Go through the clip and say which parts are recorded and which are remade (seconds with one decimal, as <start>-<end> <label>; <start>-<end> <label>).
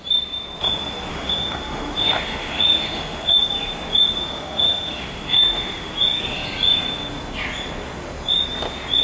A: 0.0-1.1 recorded; 1.1-3.3 remade; 3.3-4.2 recorded; 4.2-5.9 remade; 5.9-9.0 recorded